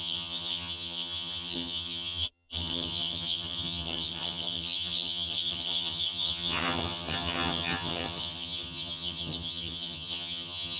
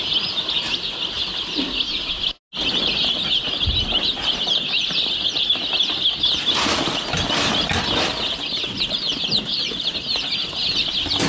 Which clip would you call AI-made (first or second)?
first